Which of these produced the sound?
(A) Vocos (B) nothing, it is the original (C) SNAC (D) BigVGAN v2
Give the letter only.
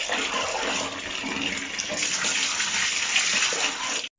B